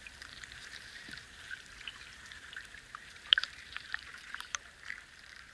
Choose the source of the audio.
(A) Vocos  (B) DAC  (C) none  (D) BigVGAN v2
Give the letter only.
D